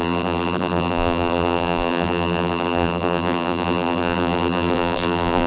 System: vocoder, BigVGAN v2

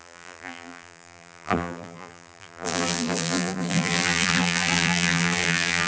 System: vocoder, BigVGAN v2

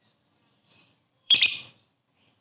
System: vocoder, BigVGAN v2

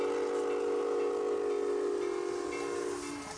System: none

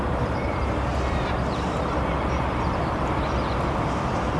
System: vocoder, BigVGAN v2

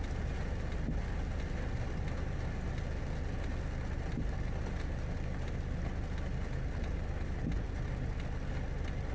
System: none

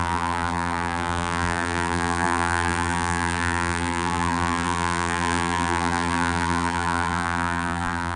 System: vocoder, BigVGAN v2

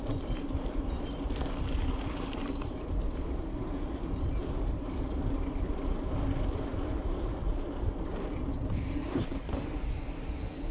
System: vocoder, BigVGAN v2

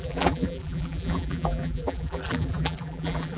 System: vocoder, BigVGAN v2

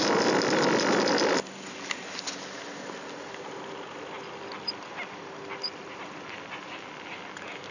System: none